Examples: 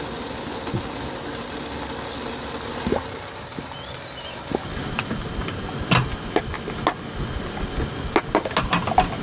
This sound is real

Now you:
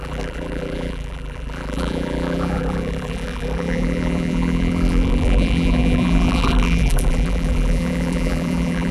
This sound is fake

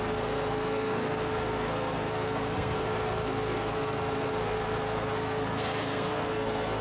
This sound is fake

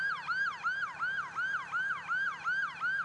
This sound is real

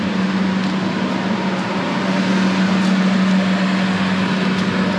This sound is real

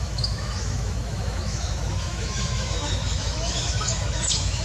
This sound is fake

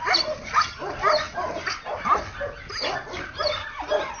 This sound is real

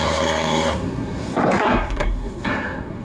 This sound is fake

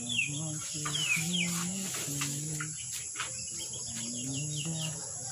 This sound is real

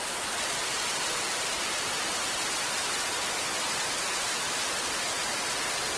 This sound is real